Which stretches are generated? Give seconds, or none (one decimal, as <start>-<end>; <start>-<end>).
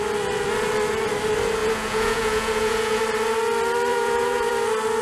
1.6-3.0; 3.9-4.5